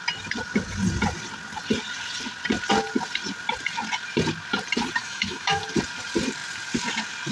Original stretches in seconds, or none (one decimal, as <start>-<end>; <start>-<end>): 0.0-5.0; 5.6-7.3

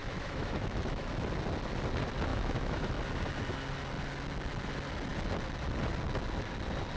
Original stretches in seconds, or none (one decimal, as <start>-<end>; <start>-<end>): 1.1-2.3; 2.9-7.0

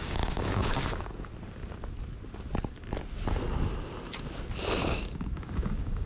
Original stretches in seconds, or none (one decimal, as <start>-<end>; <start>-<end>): 1.3-4.8

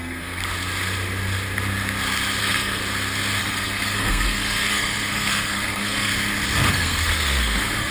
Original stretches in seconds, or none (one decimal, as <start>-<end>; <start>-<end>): 0.4-2.4; 2.8-3.4; 6.1-6.7

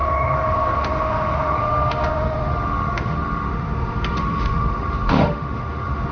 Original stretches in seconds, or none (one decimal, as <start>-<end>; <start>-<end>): none

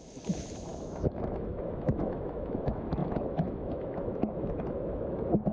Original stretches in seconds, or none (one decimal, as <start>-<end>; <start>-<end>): none

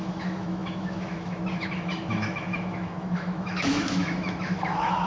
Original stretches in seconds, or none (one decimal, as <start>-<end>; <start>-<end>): none